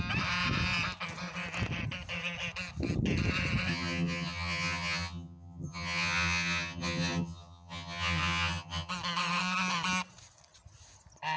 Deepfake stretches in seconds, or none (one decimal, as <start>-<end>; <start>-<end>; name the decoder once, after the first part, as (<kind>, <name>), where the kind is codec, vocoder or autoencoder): 3.7-8.9 (vocoder, HiFi-GAN)